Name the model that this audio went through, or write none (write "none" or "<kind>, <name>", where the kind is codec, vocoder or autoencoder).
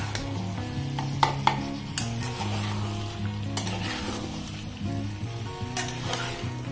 none